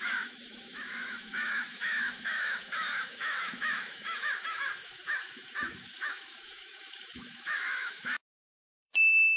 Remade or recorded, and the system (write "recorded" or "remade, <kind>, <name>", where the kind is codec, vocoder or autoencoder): remade, autoencoder, DAC-VAE